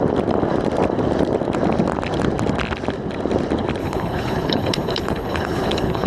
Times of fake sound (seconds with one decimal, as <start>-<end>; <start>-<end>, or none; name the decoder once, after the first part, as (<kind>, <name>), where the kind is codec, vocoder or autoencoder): 3.8-6.1 (codec, HILCodec)